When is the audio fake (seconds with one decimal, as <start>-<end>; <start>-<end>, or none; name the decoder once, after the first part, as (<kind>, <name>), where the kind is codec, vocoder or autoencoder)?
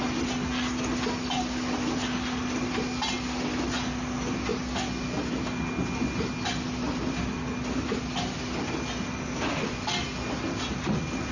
none